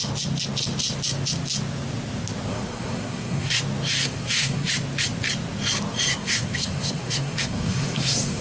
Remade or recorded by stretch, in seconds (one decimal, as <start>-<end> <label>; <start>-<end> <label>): 0.0-2.5 recorded; 2.5-3.6 remade; 3.6-4.0 recorded; 4.0-4.7 remade; 4.7-6.1 recorded; 6.1-8.4 remade